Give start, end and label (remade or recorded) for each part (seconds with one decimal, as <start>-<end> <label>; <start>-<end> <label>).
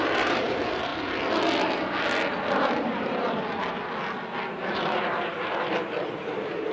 0.0-0.9 remade; 0.9-3.0 recorded; 3.0-3.4 remade; 3.4-4.5 recorded; 4.5-6.7 remade